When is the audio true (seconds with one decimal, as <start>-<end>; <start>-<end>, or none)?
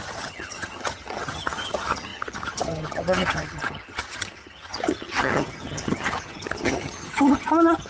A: none